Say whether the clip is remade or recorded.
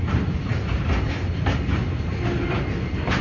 recorded